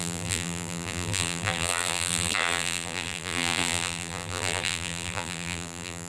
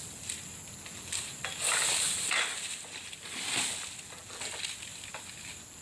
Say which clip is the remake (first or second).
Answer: first